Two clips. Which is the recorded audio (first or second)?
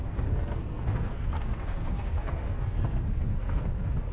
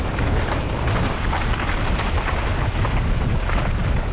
second